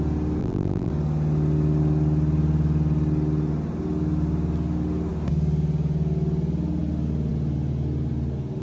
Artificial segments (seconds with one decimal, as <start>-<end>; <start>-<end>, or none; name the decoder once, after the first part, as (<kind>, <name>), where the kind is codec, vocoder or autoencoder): 0.4-0.9 (vocoder, BigVGAN v2)